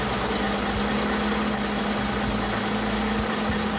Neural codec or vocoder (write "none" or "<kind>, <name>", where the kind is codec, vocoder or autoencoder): none